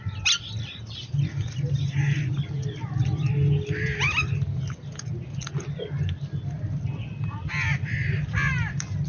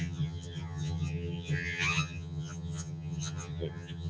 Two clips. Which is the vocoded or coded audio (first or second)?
second